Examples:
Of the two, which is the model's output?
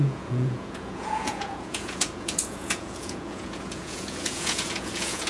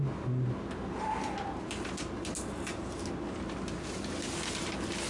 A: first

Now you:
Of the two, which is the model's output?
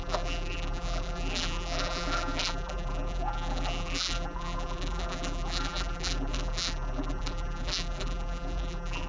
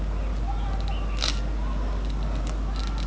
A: first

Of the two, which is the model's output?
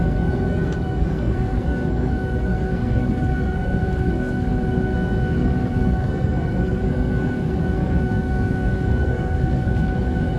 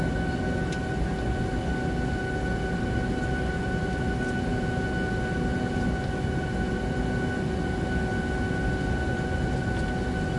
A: first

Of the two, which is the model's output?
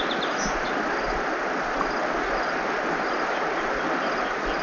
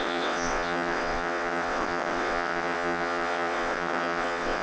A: second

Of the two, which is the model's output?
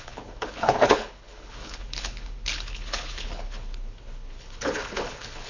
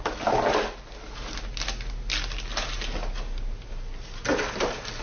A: first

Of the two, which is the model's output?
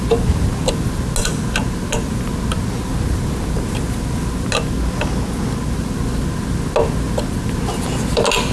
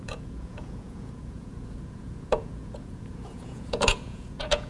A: second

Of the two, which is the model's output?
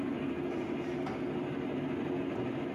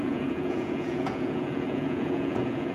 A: second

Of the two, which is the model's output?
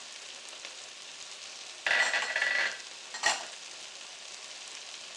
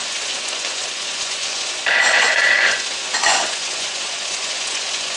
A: second